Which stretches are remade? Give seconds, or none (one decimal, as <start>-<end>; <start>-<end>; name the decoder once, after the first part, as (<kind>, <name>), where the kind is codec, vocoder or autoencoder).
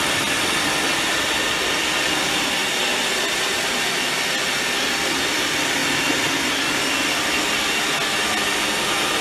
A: none